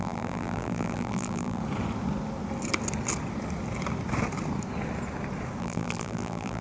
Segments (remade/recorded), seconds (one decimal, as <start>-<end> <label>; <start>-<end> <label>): 0.0-1.6 remade; 1.6-5.6 recorded; 5.6-6.6 remade